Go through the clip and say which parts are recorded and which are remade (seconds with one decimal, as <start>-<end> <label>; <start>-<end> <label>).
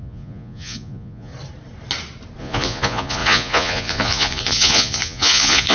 0.0-1.3 remade; 1.3-2.4 recorded; 2.4-5.7 remade